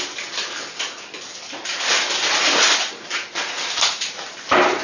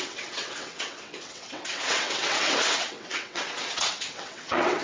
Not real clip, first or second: second